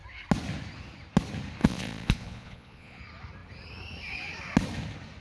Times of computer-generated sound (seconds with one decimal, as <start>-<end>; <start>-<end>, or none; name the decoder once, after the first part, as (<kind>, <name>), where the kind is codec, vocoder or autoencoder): 1.6-3.0 (vocoder, Vocos)